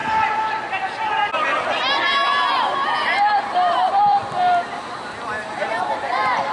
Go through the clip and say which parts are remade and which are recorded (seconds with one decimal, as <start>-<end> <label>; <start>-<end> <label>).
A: 0.0-6.5 remade